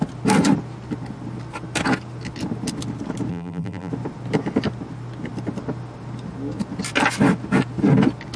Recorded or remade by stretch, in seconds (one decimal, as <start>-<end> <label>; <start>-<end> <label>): 0.0-3.3 recorded; 3.3-3.9 remade; 3.9-8.4 recorded